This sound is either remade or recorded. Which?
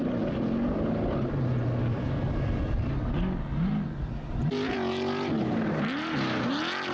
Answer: recorded